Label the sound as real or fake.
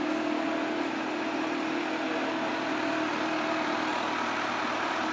real